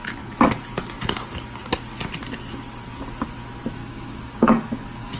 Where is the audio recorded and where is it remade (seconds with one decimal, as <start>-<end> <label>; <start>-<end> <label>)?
0.0-3.8 recorded; 3.8-5.2 remade